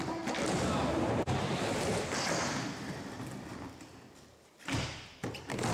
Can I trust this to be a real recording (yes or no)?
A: yes